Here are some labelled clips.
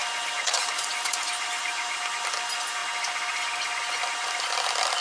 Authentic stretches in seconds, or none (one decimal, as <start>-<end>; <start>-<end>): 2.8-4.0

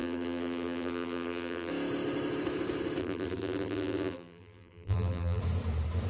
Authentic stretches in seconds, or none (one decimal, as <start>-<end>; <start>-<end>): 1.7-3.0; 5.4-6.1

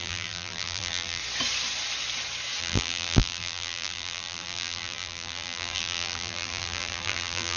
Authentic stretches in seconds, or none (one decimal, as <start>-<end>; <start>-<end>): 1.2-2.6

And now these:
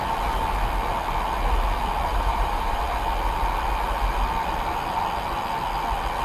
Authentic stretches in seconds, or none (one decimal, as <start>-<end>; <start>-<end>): 0.0-2.1; 2.8-6.2

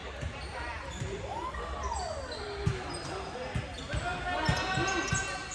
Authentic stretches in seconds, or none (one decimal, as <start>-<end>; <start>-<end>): 3.3-5.5